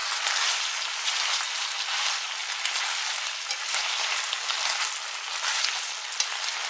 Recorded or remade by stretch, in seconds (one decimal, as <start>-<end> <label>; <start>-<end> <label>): 0.0-6.7 recorded